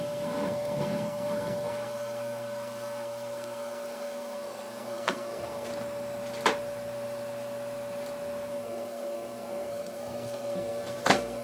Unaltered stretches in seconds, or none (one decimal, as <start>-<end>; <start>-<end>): 5.7-8.5